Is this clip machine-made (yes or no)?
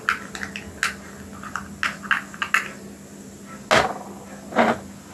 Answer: no